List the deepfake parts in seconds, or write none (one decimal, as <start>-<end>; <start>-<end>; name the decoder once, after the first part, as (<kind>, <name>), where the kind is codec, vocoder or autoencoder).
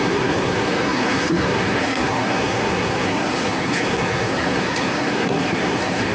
0.0-6.1 (codec, SNAC)